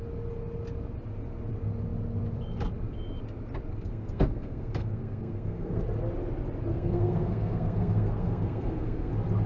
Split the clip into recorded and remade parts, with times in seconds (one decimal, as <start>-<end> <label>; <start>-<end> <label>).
0.0-3.7 recorded; 3.7-5.8 remade; 5.8-6.7 recorded; 6.7-9.1 remade; 9.1-9.5 recorded